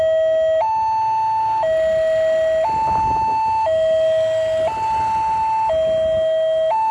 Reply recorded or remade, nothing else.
recorded